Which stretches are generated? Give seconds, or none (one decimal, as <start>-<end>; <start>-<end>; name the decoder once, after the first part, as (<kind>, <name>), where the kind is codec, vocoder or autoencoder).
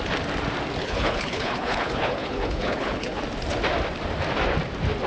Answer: 0.8-3.2 (codec, HILCodec)